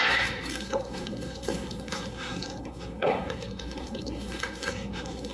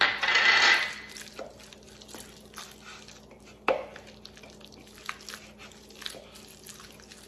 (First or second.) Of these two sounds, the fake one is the first